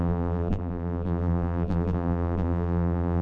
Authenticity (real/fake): fake